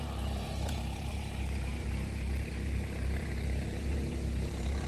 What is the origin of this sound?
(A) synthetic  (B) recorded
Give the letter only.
A